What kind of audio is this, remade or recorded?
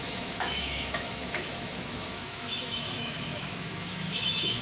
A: remade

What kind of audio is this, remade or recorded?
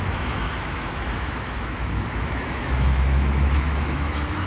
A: remade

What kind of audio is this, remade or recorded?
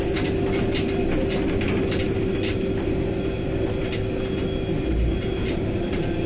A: recorded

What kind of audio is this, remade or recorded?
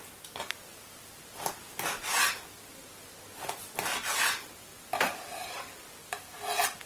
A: recorded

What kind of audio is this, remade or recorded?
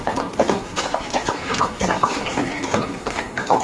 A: remade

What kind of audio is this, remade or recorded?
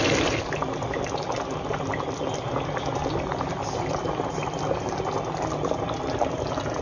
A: recorded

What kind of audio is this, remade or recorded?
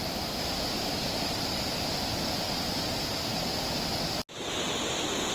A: recorded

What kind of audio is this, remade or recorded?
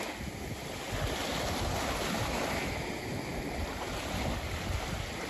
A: recorded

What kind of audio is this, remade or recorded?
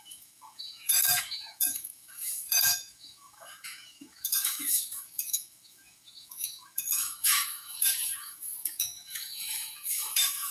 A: remade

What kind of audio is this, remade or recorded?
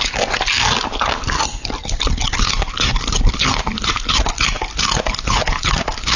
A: recorded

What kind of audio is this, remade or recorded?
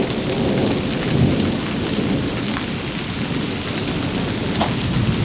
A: recorded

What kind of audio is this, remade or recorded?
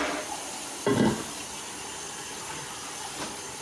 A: recorded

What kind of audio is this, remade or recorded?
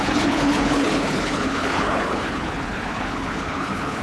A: remade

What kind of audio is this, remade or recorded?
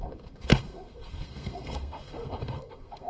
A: remade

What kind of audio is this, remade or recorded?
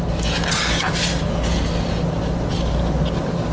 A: recorded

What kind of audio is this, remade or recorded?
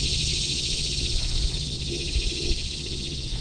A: remade